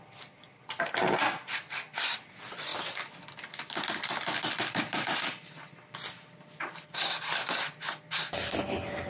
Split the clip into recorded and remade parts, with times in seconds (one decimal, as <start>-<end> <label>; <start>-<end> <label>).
0.0-9.1 recorded